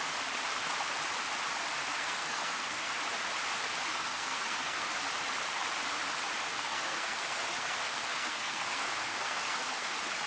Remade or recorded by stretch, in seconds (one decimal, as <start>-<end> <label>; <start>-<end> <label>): 0.0-1.9 recorded; 1.9-3.0 remade; 3.0-3.9 recorded; 3.9-4.9 remade; 4.9-6.5 recorded; 6.5-9.9 remade; 9.9-10.3 recorded